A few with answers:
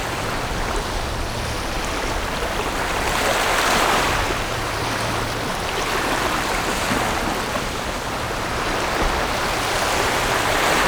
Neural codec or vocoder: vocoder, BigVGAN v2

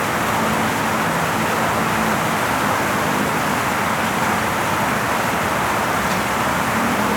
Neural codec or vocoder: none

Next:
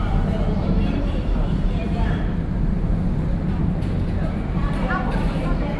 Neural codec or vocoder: vocoder, BigVGAN v2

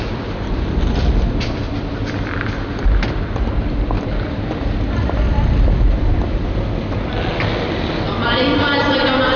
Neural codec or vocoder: vocoder, BigVGAN v2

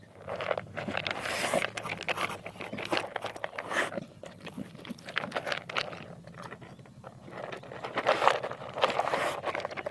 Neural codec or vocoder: none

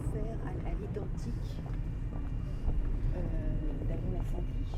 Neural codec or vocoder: vocoder, BigVGAN v2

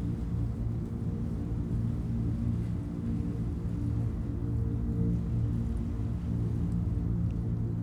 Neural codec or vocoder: none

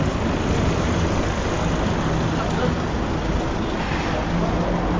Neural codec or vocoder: none